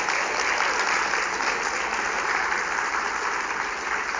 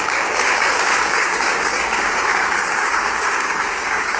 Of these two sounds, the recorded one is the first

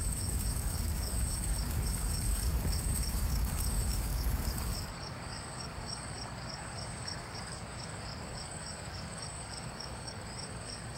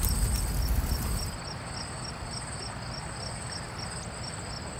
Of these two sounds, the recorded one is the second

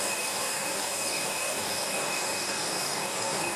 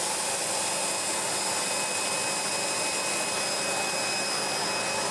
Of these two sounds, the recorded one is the second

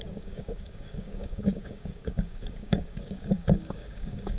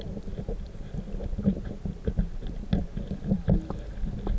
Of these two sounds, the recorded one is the second